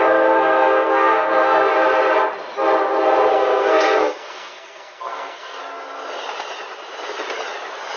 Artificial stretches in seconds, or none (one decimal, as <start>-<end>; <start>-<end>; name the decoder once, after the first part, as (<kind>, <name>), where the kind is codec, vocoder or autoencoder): 0.0-1.7 (codec, SNAC); 3.3-5.6